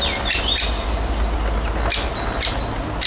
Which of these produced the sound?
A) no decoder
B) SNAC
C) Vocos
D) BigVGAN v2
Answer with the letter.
A